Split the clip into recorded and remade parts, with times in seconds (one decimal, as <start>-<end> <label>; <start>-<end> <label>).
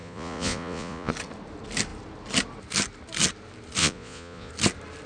0.0-1.1 remade; 1.1-3.8 recorded; 3.8-4.5 remade; 4.5-5.1 recorded